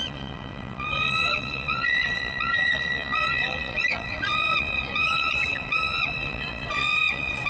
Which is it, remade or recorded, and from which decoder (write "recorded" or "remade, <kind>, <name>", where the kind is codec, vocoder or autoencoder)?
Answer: remade, vocoder, WaveNeXt